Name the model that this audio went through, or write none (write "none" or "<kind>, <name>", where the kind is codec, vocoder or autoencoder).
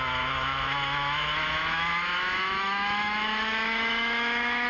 autoencoder, DAC-VAE